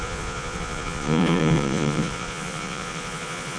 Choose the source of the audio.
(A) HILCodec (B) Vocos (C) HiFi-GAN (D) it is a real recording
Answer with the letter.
B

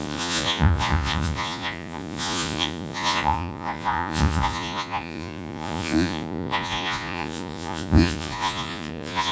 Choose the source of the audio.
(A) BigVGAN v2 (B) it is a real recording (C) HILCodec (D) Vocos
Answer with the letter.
D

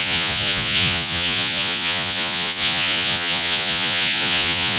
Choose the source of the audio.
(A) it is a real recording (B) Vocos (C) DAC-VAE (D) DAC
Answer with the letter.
B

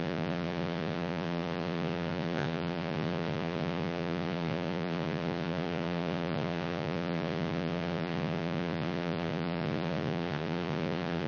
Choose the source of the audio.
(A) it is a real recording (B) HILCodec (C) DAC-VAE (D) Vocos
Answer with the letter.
D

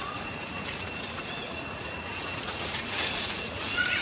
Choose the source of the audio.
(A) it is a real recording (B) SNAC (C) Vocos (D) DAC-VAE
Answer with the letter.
C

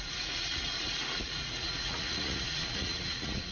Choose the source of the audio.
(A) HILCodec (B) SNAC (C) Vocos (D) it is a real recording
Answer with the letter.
C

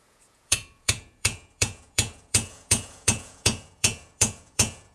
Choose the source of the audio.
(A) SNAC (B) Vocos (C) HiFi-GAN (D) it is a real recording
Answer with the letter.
B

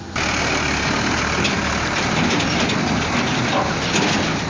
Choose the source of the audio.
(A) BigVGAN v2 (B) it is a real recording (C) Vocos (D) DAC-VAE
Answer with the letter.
B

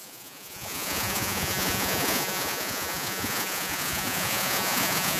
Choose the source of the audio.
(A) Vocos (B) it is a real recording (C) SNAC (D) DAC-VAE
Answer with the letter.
A